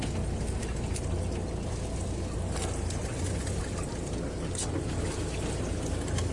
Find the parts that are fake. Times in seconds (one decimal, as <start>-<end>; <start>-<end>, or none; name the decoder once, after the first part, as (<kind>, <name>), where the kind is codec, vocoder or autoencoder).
3.0-3.6 (vocoder, Vocos)